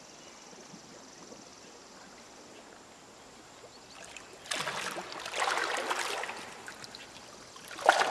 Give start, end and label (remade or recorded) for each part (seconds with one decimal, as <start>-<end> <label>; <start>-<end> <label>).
0.0-8.1 recorded